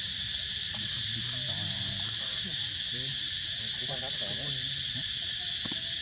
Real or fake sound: real